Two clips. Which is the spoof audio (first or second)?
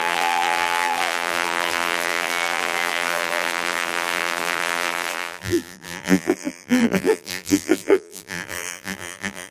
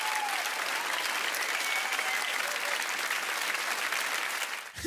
first